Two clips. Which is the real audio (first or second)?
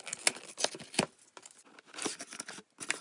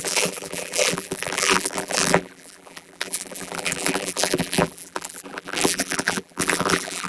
first